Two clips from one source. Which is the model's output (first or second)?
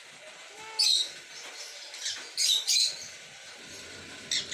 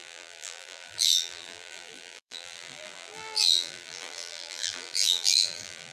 second